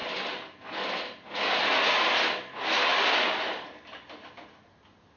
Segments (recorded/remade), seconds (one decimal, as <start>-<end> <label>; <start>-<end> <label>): 0.0-5.2 recorded